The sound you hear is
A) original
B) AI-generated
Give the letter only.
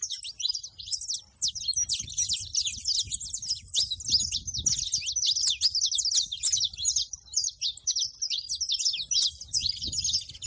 A